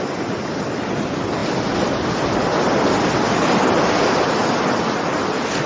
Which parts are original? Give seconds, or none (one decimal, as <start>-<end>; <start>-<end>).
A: 0.0-5.7

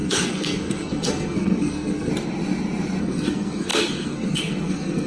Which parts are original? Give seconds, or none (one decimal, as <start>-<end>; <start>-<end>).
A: 2.1-3.0

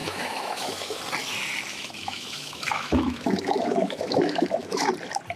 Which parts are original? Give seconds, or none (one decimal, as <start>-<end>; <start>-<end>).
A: 1.0-1.7; 4.9-5.4

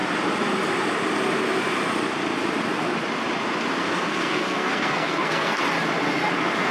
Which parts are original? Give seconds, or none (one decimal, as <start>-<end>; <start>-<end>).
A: 0.0-3.8; 5.6-6.7

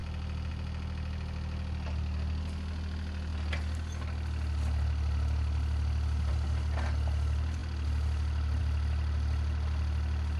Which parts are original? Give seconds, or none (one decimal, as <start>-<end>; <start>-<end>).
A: 0.0-10.4

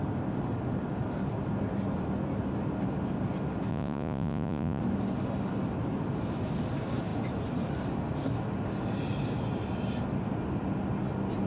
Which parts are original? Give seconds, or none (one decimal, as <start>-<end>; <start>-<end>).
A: 0.0-3.7; 4.8-11.5

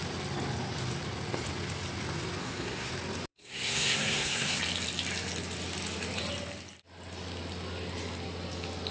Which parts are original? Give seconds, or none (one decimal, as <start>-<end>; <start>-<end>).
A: 0.0-2.4; 2.9-3.3; 4.6-8.9

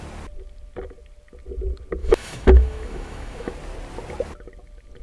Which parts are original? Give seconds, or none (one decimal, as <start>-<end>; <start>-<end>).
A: 0.0-2.0; 3.5-5.0